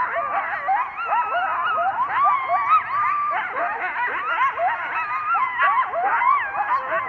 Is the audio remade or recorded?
recorded